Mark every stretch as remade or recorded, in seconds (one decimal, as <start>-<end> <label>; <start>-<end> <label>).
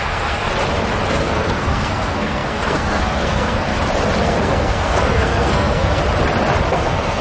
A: 0.0-0.5 remade; 0.5-1.1 recorded; 1.1-3.7 remade; 3.7-4.2 recorded; 4.2-6.0 remade; 6.0-6.7 recorded; 6.7-7.2 remade